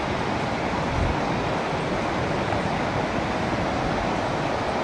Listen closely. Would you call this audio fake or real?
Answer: real